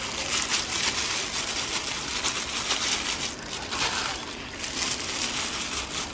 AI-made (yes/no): no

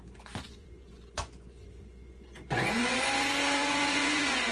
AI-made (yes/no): yes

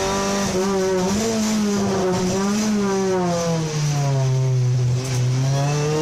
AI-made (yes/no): no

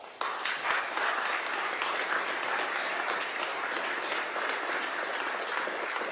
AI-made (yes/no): no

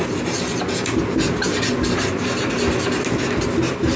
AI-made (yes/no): no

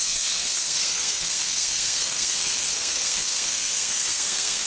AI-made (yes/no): yes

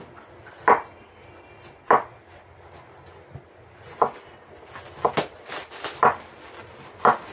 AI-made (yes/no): no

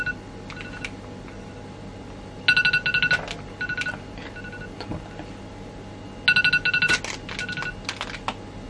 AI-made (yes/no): no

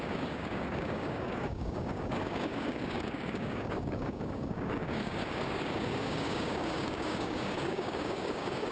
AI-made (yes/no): yes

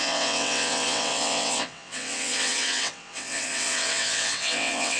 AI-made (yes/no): yes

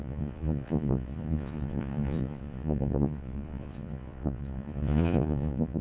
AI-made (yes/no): yes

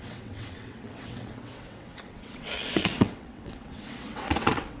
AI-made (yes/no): yes